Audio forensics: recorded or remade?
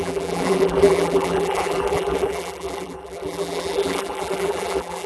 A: remade